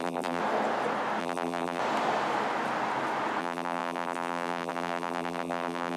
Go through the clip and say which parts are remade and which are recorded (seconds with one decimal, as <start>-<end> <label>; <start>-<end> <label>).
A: 0.0-0.4 remade; 0.4-1.2 recorded; 1.2-1.8 remade; 1.8-3.4 recorded; 3.4-6.0 remade